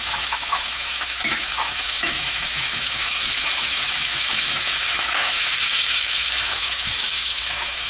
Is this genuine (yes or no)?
no